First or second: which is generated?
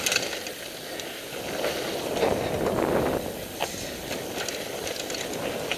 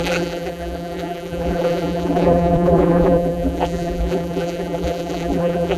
second